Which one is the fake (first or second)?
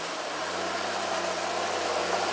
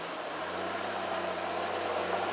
first